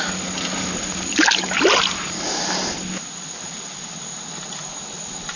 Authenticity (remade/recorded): recorded